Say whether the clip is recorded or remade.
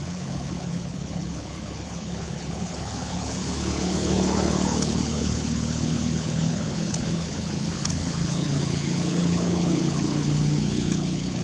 remade